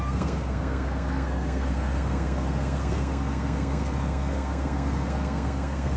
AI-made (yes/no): yes